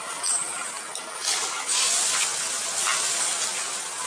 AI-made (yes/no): no